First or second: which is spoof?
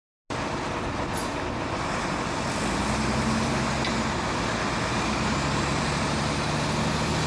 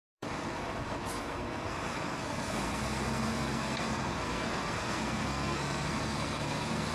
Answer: second